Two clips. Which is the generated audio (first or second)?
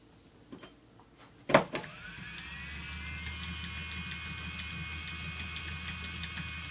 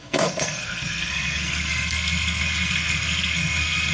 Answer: second